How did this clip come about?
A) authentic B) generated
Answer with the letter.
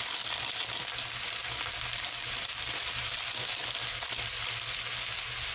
A